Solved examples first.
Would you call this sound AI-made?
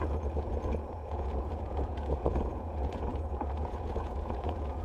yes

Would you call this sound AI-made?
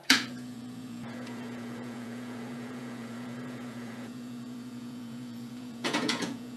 yes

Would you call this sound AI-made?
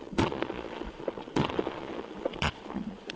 yes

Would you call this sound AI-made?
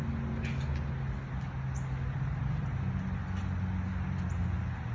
no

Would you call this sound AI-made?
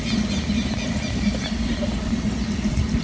no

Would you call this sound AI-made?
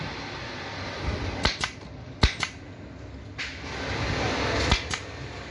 no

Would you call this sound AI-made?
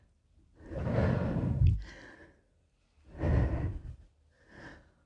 no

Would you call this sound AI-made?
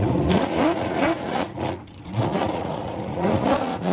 yes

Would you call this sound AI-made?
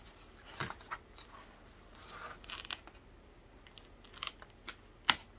no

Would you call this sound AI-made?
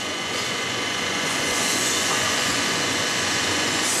yes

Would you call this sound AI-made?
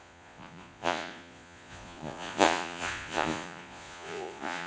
yes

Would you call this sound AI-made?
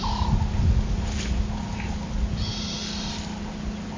no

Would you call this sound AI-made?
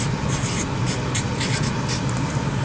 no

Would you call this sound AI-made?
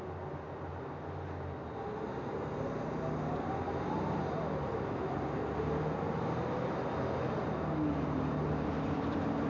no